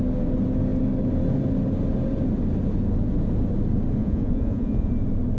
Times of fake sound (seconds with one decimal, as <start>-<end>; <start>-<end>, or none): 4.0-4.9